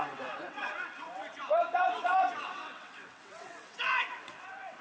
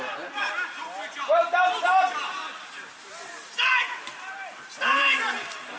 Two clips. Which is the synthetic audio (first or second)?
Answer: first